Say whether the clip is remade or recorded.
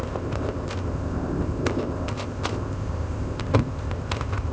remade